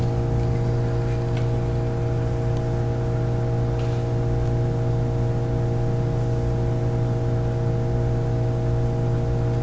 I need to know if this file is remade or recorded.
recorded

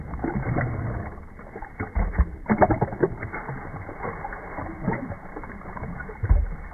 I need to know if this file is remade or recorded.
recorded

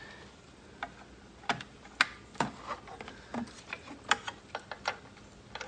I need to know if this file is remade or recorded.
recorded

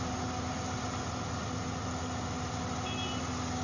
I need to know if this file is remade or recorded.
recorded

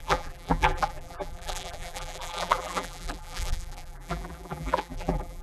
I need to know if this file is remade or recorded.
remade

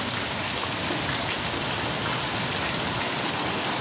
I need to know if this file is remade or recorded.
recorded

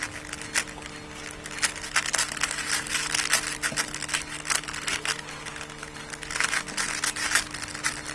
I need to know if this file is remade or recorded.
recorded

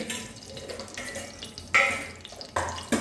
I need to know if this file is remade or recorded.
recorded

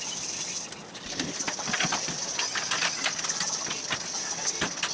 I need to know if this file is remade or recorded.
recorded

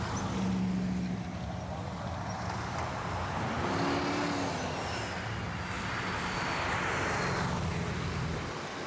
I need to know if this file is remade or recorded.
recorded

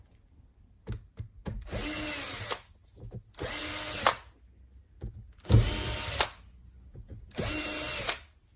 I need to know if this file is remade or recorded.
recorded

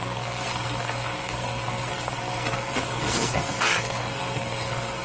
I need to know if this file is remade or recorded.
remade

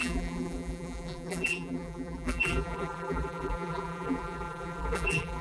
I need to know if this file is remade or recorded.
remade